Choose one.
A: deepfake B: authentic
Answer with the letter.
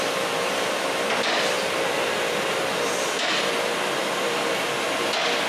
A